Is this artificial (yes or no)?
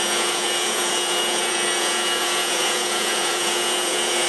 yes